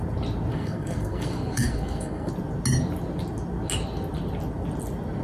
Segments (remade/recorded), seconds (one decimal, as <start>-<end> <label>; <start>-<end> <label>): 0.0-0.5 recorded; 0.5-2.3 remade; 2.3-5.2 recorded